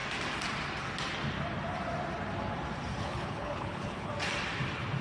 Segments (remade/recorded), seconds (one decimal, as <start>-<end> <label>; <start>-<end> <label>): 0.0-3.0 recorded; 3.0-4.1 remade; 4.1-5.0 recorded